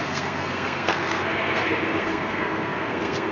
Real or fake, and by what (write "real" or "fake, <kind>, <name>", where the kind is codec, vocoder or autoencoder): fake, codec, SNAC